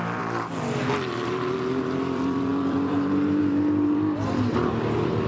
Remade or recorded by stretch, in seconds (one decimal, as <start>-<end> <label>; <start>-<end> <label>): 0.0-5.3 remade

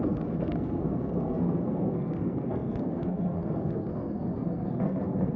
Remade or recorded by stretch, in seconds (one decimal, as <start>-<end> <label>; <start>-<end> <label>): 0.0-5.4 remade

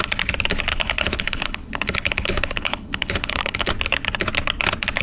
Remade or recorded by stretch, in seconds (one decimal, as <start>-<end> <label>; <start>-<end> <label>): 0.0-0.7 recorded; 0.7-3.7 remade; 3.7-5.0 recorded

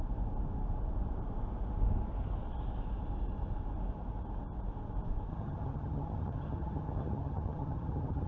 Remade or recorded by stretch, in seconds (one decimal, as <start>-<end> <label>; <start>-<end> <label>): 0.0-5.3 recorded; 5.3-8.3 remade